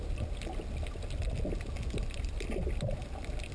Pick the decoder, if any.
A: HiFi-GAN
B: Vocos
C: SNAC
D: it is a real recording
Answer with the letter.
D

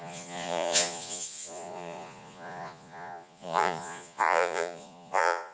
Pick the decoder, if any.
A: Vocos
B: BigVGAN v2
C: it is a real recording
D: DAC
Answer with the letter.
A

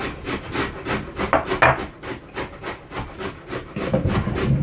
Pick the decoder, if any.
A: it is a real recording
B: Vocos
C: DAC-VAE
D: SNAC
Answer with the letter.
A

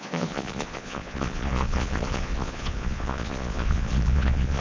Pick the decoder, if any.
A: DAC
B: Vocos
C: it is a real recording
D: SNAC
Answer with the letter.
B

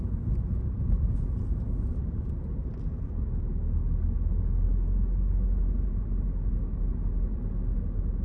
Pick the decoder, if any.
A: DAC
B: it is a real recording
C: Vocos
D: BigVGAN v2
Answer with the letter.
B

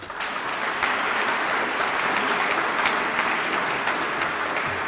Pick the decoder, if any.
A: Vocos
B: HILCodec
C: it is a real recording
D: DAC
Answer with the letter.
C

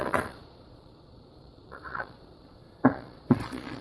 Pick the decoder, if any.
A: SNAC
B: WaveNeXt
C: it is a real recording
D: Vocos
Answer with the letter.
D